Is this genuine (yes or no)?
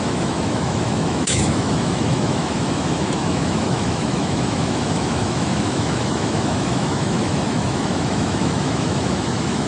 no